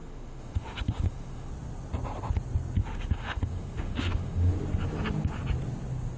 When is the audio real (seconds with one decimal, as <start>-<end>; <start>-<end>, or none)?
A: 1.5-2.8; 4.5-6.2